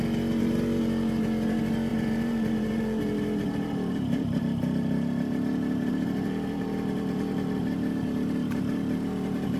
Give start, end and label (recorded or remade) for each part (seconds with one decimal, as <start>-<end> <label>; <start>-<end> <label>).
0.0-1.9 recorded; 1.9-3.0 remade; 3.0-3.4 recorded; 3.4-4.4 remade; 4.4-5.9 recorded; 5.9-9.6 remade